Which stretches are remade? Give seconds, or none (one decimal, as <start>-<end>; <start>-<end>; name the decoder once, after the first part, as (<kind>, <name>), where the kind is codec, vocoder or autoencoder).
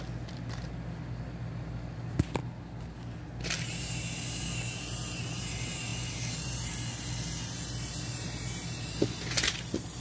none